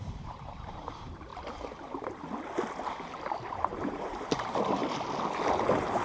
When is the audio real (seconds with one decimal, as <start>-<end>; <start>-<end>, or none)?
1.3-3.4; 4.8-6.0